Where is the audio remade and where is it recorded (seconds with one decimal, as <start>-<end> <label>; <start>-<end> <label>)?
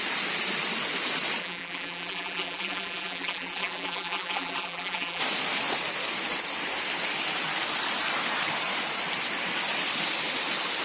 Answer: 0.0-1.4 recorded; 1.4-5.2 remade; 5.2-10.8 recorded